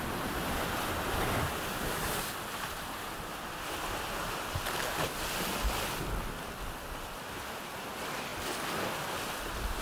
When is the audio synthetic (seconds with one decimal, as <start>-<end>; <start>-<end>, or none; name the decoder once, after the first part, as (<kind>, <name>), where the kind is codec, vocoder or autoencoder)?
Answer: none